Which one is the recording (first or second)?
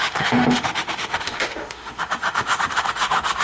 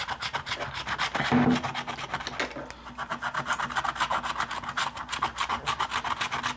second